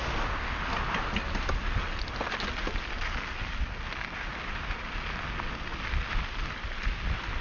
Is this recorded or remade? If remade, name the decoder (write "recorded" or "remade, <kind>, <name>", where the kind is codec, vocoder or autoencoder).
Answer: recorded